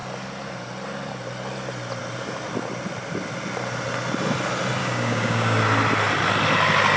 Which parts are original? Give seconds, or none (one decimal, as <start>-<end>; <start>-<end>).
0.0-4.8; 5.6-7.0